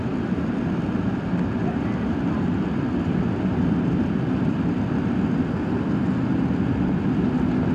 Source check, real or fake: real